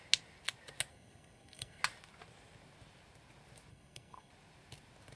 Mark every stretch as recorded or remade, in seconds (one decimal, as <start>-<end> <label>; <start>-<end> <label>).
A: 0.0-0.9 recorded; 0.9-1.8 remade; 1.8-3.7 recorded; 3.7-4.3 remade; 4.3-5.2 recorded